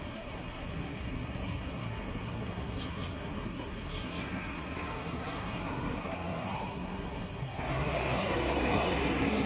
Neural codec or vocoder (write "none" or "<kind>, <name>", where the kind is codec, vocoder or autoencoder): codec, SNAC